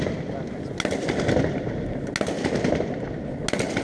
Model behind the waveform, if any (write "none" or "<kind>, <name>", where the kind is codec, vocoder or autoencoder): none